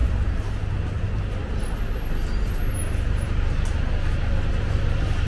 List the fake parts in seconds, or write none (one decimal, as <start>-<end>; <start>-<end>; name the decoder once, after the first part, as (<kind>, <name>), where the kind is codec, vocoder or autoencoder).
none